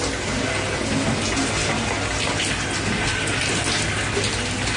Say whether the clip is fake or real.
real